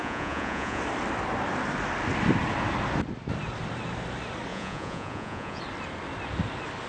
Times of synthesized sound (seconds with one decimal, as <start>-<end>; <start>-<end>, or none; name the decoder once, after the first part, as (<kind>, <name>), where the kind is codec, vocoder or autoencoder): 0.0-0.8 (vocoder, Vocos); 4.5-5.6

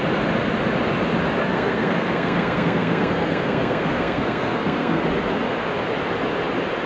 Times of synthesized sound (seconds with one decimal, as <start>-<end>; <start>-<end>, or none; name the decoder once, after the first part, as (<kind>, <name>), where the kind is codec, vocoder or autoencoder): 1.4-5.0 (codec, SNAC)

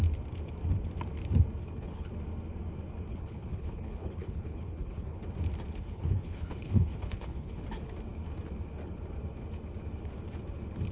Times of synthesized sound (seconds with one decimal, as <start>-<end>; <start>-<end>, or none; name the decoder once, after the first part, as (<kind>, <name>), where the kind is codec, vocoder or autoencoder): 1.6-2.1 (codec, HILCodec); 3.1-5.2; 5.8-7.6

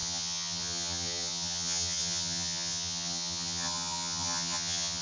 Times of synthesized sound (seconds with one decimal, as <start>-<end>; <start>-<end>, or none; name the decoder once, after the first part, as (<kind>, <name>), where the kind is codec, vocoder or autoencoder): 0.0-5.0 (vocoder, HiFi-GAN)

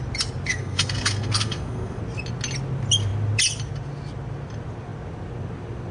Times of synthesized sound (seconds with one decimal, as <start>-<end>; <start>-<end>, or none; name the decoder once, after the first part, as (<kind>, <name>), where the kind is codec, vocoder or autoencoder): 0.5-2.0 (codec, SNAC)